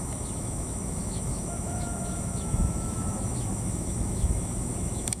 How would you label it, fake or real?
fake